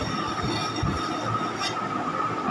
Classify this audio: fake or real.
real